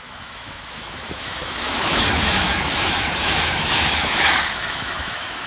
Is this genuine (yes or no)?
no